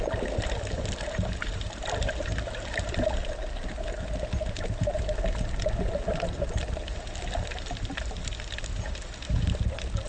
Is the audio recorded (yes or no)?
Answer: yes